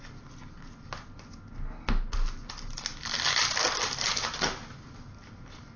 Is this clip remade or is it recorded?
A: recorded